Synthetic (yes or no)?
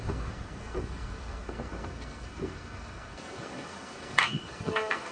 yes